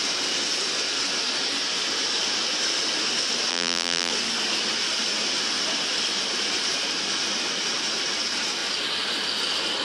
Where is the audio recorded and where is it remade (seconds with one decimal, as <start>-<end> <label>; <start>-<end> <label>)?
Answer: 0.0-3.5 recorded; 3.5-4.1 remade; 4.1-9.8 recorded